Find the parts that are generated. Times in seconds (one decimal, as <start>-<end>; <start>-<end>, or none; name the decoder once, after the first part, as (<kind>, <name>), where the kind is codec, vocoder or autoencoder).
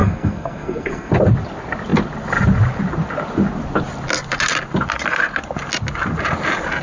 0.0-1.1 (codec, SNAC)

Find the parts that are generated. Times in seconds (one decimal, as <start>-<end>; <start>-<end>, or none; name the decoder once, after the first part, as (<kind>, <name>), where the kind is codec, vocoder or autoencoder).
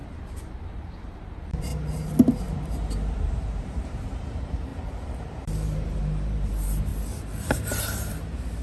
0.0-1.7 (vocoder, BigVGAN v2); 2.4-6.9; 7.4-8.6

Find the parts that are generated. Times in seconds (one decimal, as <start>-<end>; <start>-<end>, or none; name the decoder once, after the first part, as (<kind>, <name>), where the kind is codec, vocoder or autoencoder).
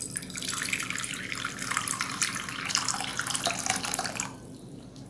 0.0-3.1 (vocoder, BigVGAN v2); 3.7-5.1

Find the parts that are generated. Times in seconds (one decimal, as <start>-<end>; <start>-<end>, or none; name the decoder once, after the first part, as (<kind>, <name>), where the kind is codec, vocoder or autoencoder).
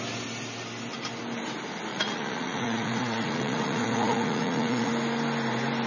1.9-4.9 (vocoder, Vocos)